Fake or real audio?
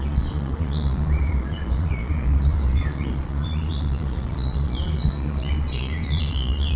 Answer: fake